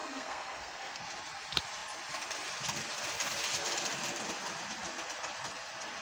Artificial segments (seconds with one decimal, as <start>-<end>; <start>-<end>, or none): 0.0-1.0